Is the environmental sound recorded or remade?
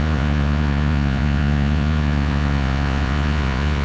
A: remade